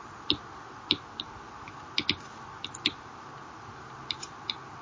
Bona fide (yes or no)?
yes